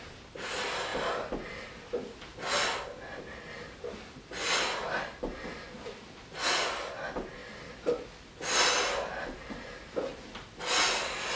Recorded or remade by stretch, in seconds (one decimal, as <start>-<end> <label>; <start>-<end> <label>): 0.0-11.4 recorded